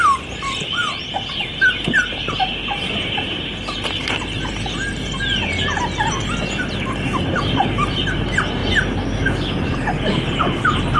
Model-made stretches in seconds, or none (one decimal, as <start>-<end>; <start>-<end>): none